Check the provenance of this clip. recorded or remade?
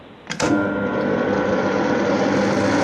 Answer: recorded